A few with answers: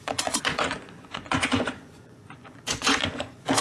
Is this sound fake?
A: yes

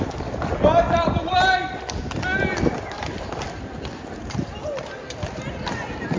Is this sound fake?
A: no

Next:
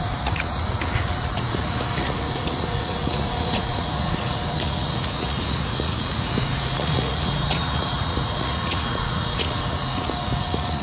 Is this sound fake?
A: yes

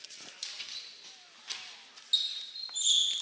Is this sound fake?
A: no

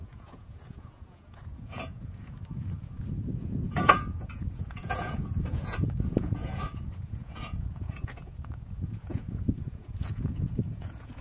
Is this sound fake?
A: yes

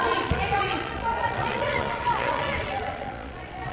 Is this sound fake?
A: yes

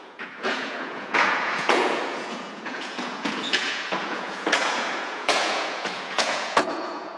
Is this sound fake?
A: yes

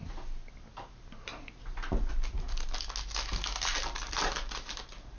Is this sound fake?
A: no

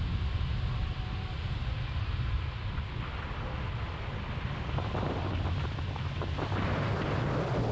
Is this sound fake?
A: no